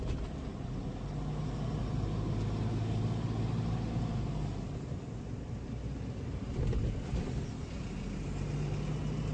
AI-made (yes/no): no